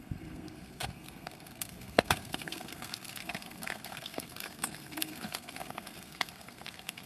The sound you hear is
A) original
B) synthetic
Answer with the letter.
B